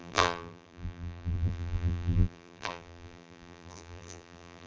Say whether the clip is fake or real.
fake